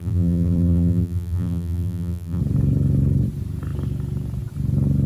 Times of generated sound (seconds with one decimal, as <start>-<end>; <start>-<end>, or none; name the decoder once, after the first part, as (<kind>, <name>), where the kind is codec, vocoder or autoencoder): 0.0-2.4 (vocoder, BigVGAN v2)